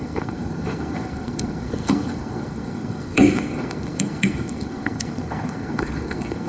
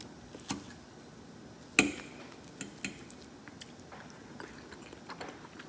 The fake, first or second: first